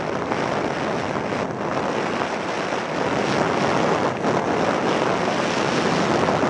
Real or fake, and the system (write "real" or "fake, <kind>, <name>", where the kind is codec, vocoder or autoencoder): real